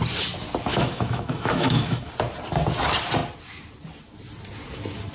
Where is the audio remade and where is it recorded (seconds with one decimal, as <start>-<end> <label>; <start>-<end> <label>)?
0.0-0.7 recorded; 0.7-2.1 remade; 2.1-5.1 recorded